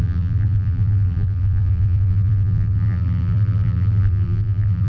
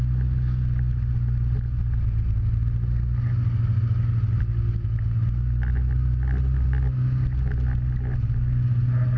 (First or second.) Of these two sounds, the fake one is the first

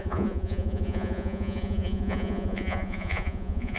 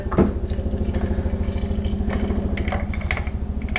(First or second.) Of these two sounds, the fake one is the first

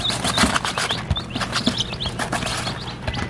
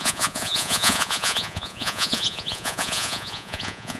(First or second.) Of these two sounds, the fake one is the second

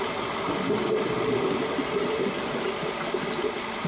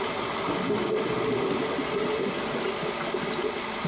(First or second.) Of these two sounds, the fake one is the first